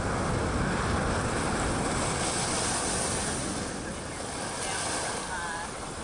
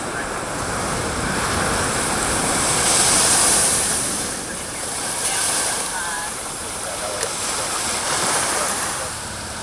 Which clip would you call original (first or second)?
first